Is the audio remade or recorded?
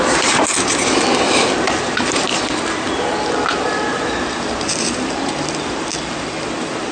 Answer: recorded